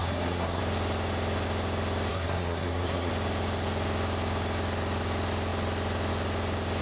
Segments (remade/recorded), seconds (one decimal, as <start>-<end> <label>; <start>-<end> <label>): 0.0-0.6 remade; 0.6-2.1 recorded; 2.1-3.1 remade; 3.1-6.8 recorded